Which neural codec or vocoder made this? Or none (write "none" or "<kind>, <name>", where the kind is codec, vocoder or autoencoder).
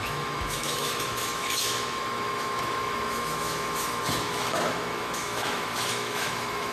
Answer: autoencoder, DAC-VAE